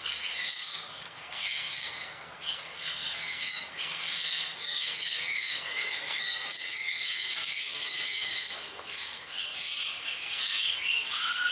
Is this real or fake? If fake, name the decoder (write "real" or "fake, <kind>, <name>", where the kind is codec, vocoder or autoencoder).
fake, codec, SNAC